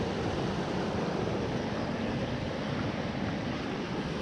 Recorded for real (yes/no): yes